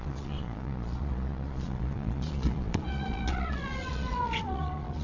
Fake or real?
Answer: fake